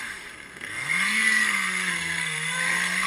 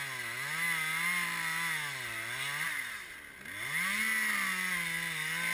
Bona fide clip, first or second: second